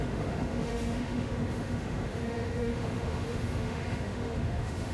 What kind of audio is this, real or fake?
fake